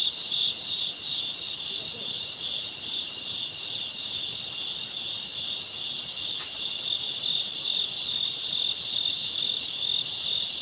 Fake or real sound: real